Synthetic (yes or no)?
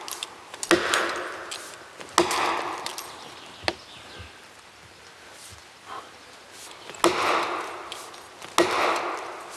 no